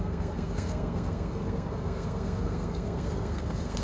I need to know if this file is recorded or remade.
remade